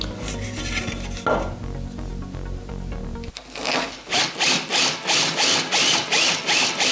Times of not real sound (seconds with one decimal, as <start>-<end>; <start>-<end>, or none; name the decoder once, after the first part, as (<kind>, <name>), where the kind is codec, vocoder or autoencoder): none